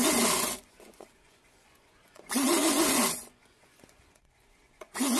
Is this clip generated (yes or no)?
yes